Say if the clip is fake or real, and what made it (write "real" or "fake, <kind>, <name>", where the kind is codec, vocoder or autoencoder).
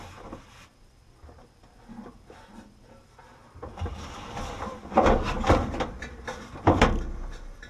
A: fake, vocoder, BigVGAN v2